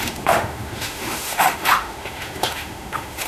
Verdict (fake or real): fake